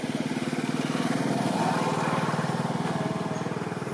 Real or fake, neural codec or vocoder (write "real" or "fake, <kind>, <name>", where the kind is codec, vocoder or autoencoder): real